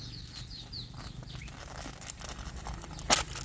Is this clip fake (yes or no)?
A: no